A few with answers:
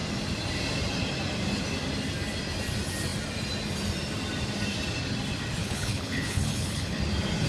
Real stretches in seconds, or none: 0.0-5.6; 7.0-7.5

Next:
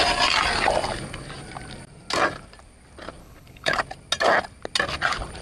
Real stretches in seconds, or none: 0.0-3.2; 3.8-5.4

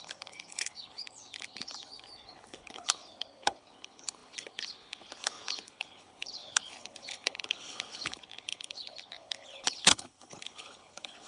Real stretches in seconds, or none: none

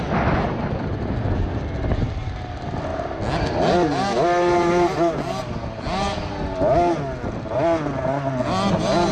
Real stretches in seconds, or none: 0.0-9.1

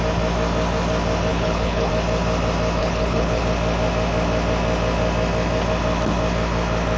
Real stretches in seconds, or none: 0.0-1.3; 1.9-2.8; 3.4-7.0

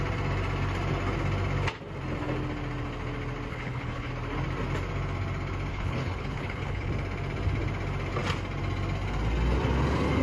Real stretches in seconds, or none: 0.0-3.5; 4.1-5.7; 6.9-10.2

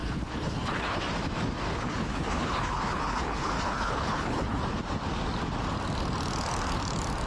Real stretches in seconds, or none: 1.0-1.7; 4.6-7.3